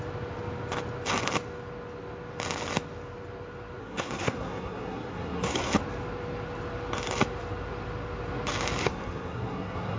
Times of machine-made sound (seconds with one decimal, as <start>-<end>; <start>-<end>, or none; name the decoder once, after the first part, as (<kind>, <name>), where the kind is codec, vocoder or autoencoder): 3.8-5.7 (codec, SNAC); 8.8-10.0